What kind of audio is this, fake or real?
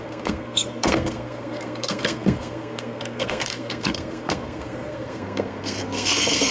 fake